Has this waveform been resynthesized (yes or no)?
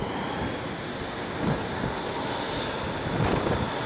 no